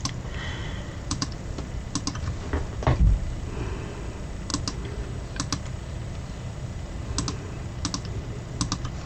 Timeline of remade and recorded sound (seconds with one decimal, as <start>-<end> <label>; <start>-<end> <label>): 0.0-0.6 recorded; 0.6-1.4 remade; 1.4-9.1 recorded